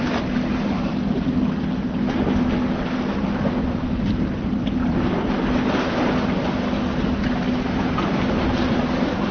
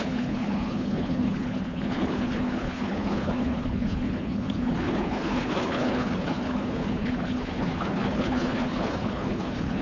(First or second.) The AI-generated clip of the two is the second